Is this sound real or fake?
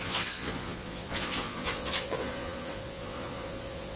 fake